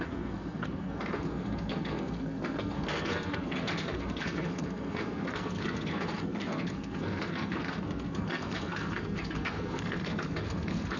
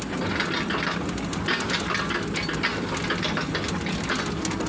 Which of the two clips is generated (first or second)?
first